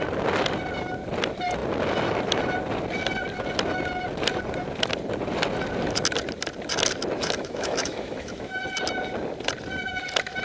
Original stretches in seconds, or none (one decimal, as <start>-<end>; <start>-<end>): 0.0-7.2; 8.6-10.4

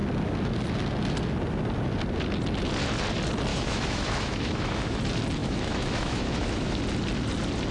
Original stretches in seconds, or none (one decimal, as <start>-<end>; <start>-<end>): 0.0-3.5; 5.0-5.4; 6.8-7.7

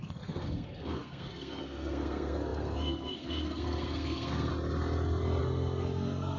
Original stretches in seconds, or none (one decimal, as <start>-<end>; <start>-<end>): 4.5-5.4

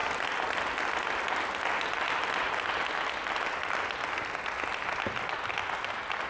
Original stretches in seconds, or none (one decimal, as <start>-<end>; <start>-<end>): 0.0-6.3

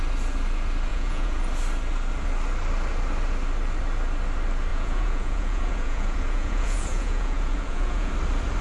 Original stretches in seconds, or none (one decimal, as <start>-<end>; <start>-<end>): 0.0-0.9; 1.4-4.7; 8.1-8.6